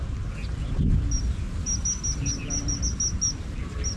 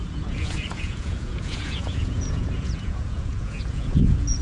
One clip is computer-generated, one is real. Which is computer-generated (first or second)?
second